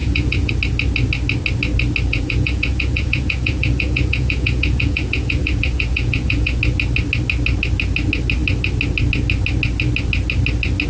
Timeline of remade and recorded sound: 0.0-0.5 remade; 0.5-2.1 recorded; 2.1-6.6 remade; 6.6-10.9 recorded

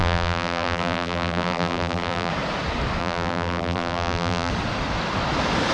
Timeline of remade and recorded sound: 0.0-2.3 remade; 2.3-3.0 recorded; 3.0-4.5 remade; 4.5-5.7 recorded

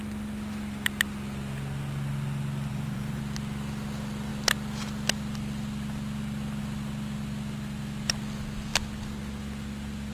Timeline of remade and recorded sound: 0.0-2.7 recorded; 2.7-3.2 remade; 3.2-10.1 recorded

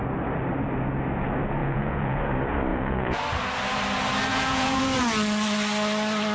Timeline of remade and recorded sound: 0.0-1.6 recorded; 1.6-2.2 remade; 2.2-2.7 recorded; 2.7-3.2 remade; 3.2-4.3 recorded; 4.3-4.8 remade; 4.8-6.3 recorded